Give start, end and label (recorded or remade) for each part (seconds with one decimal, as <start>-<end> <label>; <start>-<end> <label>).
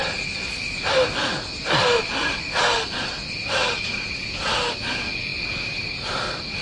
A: 0.0-6.6 recorded